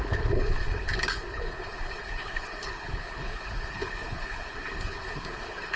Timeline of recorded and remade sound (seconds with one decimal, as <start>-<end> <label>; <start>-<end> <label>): 0.0-5.8 remade